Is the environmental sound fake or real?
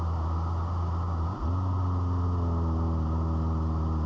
real